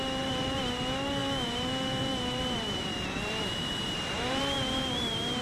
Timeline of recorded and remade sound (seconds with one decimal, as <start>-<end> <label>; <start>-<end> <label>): 0.0-5.4 remade